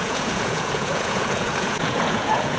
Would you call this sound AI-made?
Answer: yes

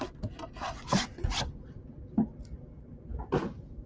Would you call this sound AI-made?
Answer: no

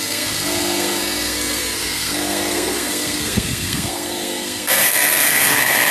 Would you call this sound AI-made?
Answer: yes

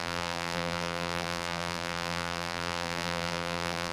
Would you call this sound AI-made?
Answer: yes